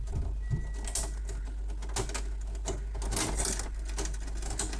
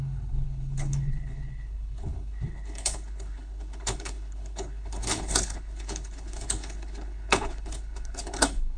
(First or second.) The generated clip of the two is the second